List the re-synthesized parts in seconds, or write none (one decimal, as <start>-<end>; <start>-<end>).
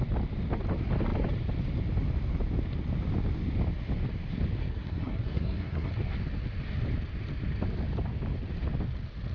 4.6-5.9